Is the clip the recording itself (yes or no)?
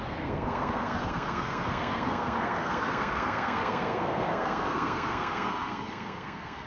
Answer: no